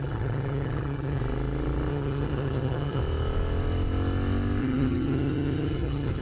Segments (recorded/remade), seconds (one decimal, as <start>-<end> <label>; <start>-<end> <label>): 0.0-1.2 remade; 1.2-1.9 recorded; 1.9-3.0 remade; 3.0-4.6 recorded; 4.6-6.2 remade